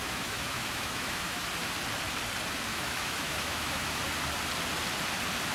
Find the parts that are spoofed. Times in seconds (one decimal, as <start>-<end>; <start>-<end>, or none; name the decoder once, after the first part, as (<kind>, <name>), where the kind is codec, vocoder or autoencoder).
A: 0.0-1.5 (autoencoder, DAC-VAE); 2.7-4.0

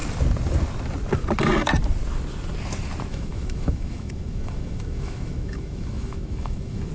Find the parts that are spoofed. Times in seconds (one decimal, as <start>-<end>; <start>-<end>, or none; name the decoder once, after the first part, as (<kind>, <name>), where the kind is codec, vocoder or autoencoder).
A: 3.1-6.9 (autoencoder, DAC-VAE)

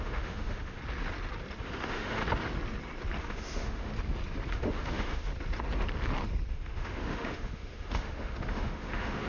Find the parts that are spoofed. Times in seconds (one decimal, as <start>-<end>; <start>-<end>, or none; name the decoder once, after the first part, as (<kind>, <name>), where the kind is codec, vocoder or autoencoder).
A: 0.0-0.8 (autoencoder, DAC-VAE); 1.6-2.2; 3.2-3.9; 4.5-5.3; 6.5-9.3

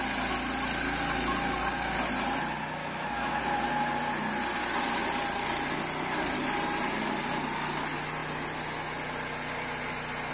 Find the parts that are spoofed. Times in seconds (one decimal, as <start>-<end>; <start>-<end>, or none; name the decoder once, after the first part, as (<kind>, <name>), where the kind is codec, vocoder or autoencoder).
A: 2.8-3.4 (autoencoder, DAC-VAE)

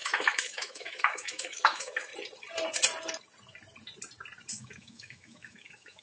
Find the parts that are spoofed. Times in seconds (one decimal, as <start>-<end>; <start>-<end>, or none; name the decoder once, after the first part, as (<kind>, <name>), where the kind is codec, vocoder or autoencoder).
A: 0.0-2.1 (autoencoder, DAC-VAE); 4.5-6.0

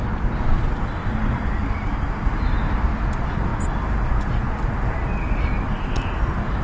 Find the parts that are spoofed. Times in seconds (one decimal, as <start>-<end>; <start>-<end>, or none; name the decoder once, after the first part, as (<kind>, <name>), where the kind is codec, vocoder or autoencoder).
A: none

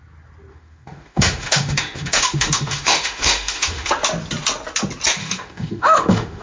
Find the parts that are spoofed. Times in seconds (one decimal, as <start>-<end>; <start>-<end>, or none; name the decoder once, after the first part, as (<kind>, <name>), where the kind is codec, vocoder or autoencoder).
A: 0.5-3.9 (autoencoder, DAC-VAE); 5.2-6.4